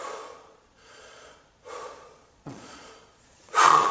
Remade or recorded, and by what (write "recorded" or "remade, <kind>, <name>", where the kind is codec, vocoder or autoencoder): remade, vocoder, Vocos